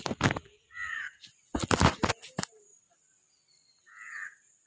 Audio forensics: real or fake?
real